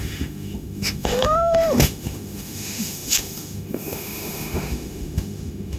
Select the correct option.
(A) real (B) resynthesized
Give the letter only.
B